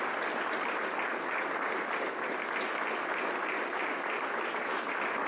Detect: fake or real real